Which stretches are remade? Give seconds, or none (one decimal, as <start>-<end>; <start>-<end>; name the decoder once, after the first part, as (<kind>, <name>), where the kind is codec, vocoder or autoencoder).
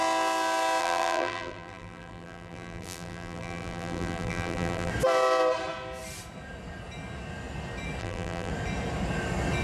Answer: 0.8-4.9 (vocoder, BigVGAN v2); 8.0-8.5